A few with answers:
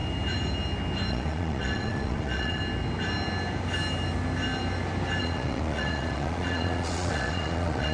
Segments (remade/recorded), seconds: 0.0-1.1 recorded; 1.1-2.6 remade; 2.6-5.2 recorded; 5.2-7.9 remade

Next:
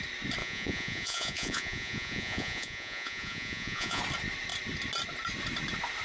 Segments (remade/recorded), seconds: 0.0-0.4 recorded; 0.4-4.0 remade; 4.0-6.0 recorded

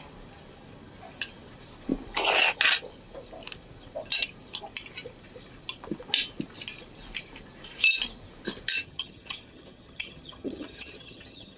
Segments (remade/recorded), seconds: 0.0-8.8 recorded; 8.8-11.6 remade

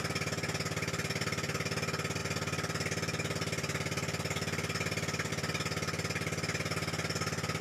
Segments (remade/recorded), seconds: 0.0-7.6 recorded

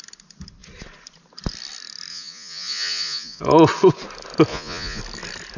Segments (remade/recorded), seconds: 0.0-2.1 recorded; 2.1-3.4 remade; 3.4-4.5 recorded; 4.5-5.0 remade; 5.0-5.6 recorded

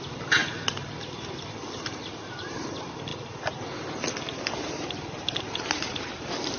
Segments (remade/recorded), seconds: 0.0-0.4 remade; 0.4-1.9 recorded; 1.9-3.1 remade; 3.1-4.5 recorded; 4.5-6.6 remade

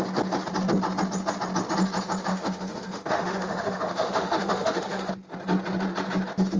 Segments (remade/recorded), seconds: 0.0-2.3 recorded; 2.3-5.1 remade; 5.1-6.6 recorded

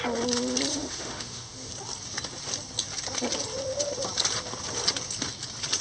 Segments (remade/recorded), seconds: 0.0-0.7 recorded; 0.7-1.7 remade; 1.7-5.8 recorded